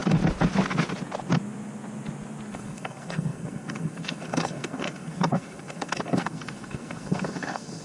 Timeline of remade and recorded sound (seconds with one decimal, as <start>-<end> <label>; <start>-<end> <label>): 0.0-2.5 recorded; 2.5-7.8 remade